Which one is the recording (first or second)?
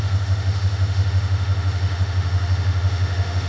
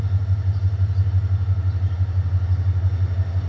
second